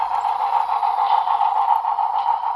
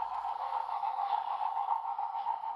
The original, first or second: first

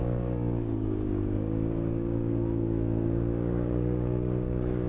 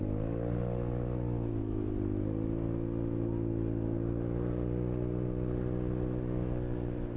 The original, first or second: second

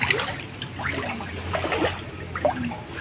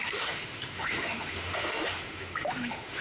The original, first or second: first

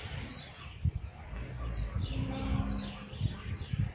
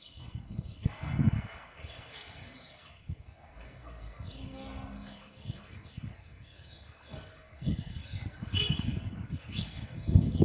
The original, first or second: first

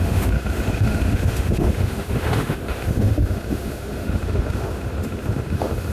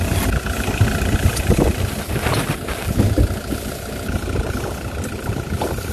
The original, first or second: second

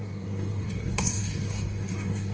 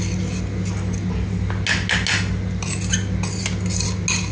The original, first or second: second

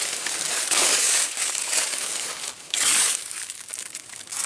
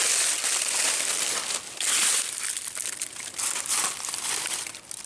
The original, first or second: second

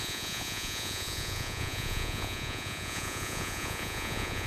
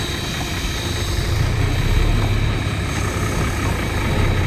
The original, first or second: second